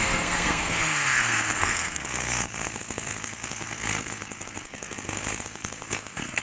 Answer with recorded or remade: remade